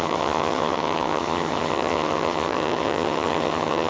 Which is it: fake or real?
fake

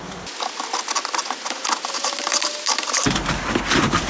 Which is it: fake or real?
real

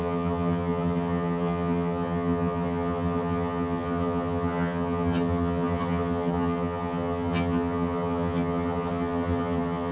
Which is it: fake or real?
fake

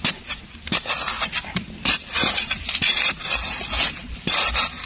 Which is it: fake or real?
real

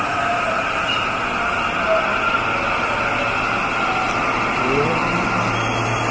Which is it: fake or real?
real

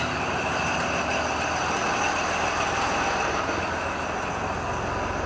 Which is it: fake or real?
real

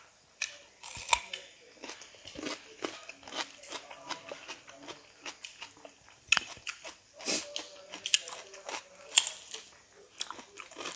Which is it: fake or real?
real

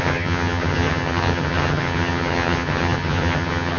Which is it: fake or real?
fake